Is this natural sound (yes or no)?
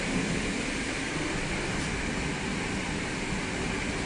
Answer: yes